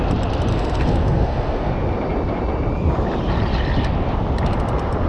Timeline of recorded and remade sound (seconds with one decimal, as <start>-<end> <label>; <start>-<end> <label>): 0.0-0.5 recorded; 0.5-1.7 remade; 1.7-5.1 recorded